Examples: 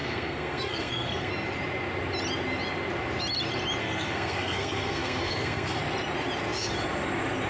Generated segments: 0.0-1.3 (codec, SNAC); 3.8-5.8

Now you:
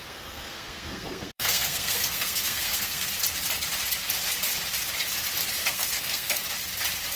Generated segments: 0.0-3.1 (codec, SNAC); 5.6-6.4

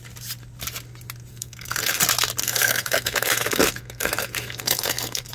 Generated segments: 1.3-2.0 (codec, SNAC); 2.4-5.3

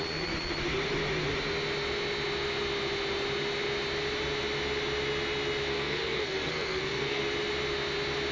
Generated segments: 5.7-7.2 (codec, SNAC)

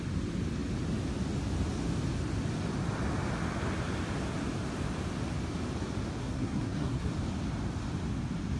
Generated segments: 6.2-7.1 (codec, SNAC)